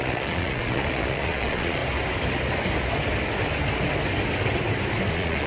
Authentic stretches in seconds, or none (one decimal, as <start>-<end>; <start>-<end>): 1.8-5.1